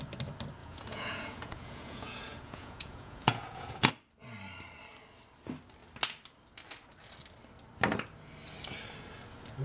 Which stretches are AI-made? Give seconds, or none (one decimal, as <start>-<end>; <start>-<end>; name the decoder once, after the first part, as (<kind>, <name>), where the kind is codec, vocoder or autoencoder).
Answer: 0.6-3.9 (vocoder, Vocos)